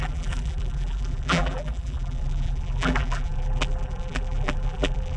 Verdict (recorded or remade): remade